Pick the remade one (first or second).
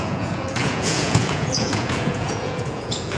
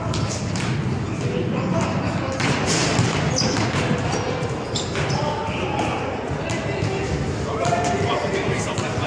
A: first